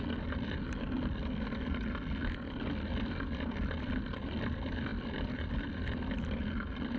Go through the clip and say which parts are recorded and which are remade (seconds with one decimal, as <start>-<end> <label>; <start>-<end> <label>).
0.0-7.0 recorded